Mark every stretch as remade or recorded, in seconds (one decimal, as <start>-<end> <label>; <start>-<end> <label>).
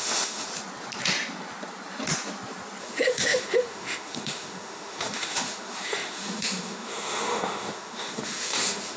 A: 0.0-0.5 remade; 0.5-2.8 recorded; 2.8-9.0 remade